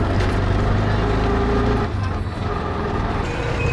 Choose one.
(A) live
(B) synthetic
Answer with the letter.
A